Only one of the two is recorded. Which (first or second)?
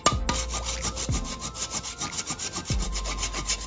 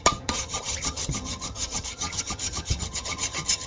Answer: first